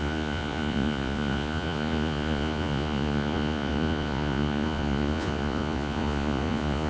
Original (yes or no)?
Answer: no